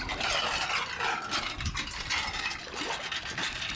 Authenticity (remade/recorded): recorded